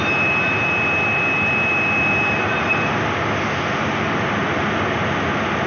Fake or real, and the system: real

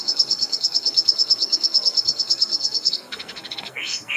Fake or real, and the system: fake, codec, SNAC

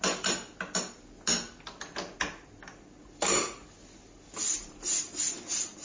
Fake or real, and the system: real